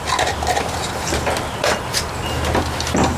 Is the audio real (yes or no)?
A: yes